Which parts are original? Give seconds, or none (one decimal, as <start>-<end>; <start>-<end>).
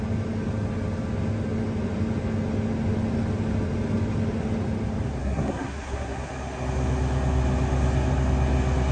0.0-5.2; 6.3-8.9